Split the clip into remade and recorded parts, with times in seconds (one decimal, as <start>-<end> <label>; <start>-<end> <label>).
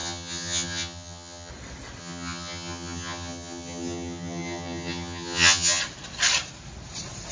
0.0-1.5 remade; 1.5-2.0 recorded; 2.0-5.8 remade; 5.8-7.3 recorded